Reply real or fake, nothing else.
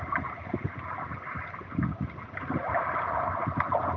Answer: real